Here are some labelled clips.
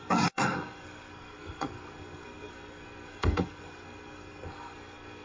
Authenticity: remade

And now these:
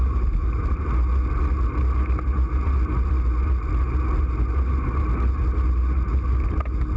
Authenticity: recorded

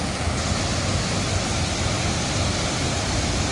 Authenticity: recorded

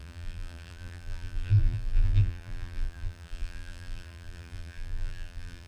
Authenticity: remade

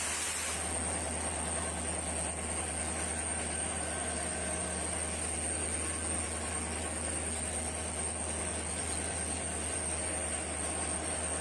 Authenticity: recorded